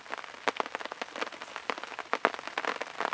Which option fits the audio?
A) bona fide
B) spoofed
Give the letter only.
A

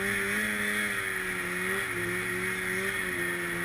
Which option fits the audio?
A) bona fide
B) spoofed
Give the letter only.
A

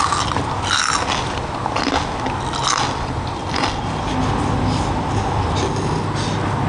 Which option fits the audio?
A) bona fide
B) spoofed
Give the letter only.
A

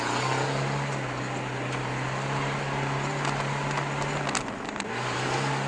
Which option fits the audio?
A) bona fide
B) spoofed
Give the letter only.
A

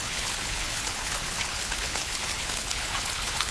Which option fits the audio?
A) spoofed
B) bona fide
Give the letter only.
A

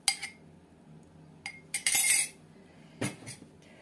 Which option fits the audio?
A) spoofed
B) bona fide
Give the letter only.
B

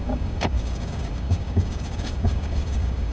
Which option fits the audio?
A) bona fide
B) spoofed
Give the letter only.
B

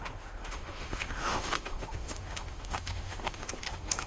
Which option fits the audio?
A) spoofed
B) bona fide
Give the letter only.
A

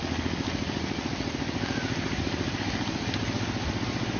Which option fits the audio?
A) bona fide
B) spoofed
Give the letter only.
A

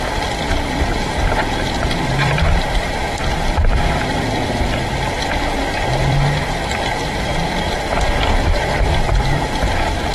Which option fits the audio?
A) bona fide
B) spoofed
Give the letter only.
B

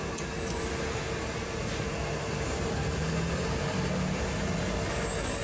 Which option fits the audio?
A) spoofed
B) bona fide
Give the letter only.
B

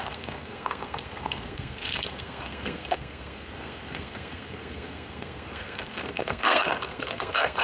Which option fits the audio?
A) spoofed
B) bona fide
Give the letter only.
A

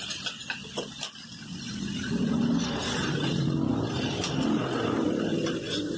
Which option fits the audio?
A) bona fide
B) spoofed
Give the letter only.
A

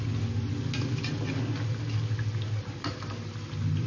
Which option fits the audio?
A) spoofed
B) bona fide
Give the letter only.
B